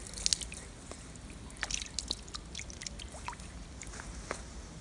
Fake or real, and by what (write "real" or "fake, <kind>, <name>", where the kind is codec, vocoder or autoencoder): real